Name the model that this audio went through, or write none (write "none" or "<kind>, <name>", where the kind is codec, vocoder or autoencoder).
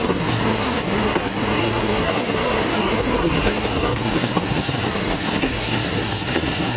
codec, SNAC